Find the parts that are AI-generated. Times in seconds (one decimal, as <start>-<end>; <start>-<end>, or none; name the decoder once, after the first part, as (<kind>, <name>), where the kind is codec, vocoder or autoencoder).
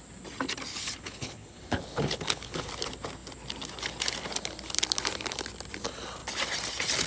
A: 0.7-2.7 (codec, HILCodec)